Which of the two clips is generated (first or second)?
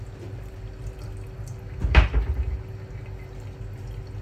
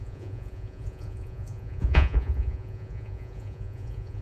second